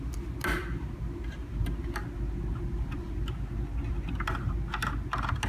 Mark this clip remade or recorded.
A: recorded